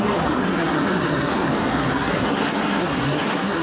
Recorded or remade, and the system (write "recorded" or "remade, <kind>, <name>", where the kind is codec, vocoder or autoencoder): remade, codec, SNAC